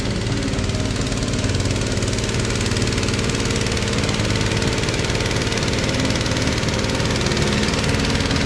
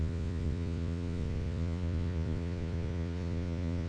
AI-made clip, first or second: second